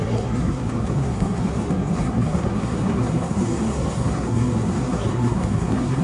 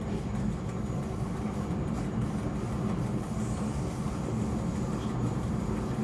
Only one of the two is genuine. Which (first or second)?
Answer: second